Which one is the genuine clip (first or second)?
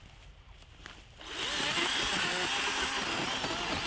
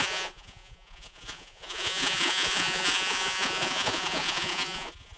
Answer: first